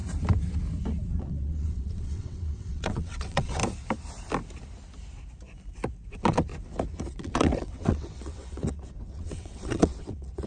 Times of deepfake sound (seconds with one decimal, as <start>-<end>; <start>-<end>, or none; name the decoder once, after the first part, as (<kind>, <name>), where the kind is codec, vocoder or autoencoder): 1.2-3.6 (vocoder, WaveNeXt); 6.1-6.5; 7.1-10.5